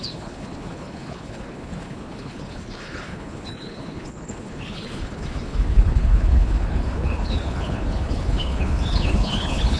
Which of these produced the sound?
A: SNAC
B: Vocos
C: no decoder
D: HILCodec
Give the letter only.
D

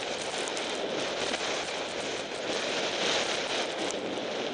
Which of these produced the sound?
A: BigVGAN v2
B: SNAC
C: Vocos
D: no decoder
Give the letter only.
D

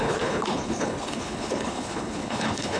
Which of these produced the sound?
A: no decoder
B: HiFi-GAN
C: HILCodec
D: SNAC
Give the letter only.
C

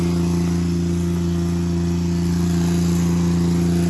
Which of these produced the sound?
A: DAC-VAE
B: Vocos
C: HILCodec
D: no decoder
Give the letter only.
D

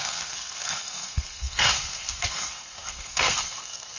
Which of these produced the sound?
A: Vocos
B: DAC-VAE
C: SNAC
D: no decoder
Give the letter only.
C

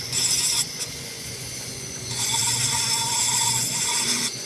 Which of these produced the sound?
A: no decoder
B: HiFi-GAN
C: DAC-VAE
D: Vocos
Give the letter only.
D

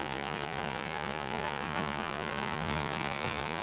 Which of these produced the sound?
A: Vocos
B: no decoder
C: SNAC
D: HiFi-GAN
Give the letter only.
A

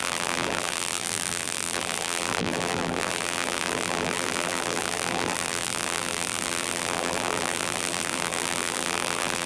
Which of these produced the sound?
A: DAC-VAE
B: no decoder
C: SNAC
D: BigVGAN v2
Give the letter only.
D